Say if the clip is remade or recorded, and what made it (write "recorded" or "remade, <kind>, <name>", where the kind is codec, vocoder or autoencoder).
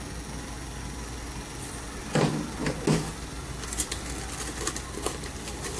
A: recorded